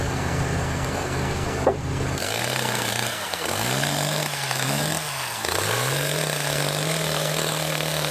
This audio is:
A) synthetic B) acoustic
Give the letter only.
A